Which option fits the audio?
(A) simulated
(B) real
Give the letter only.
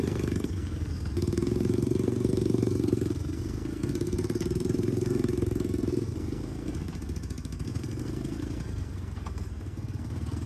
A